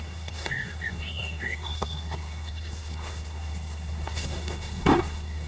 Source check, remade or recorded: remade